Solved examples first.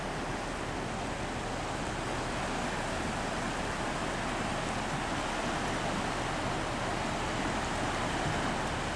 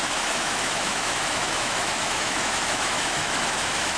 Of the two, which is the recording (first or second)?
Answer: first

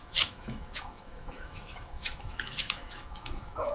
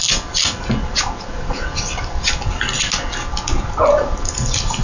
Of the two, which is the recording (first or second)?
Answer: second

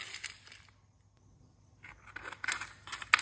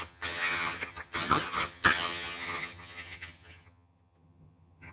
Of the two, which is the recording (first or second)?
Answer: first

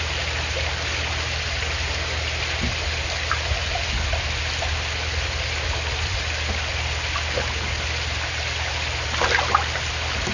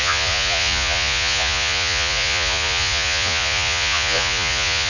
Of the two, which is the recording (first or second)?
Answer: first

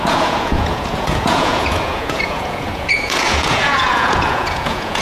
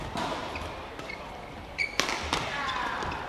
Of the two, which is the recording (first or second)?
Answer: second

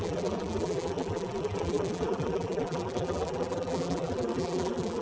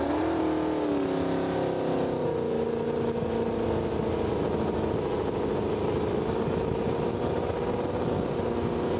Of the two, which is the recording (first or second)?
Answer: second